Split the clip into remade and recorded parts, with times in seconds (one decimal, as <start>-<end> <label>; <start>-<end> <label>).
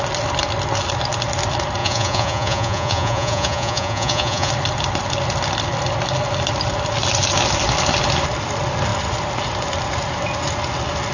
0.0-1.8 recorded; 1.8-4.5 remade; 4.5-11.1 recorded